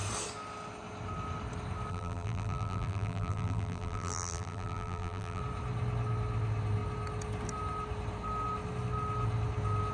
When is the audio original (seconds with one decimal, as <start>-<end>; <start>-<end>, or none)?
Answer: 0.0-1.9; 5.4-9.9